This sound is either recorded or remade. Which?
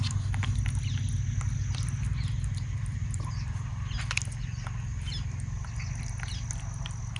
recorded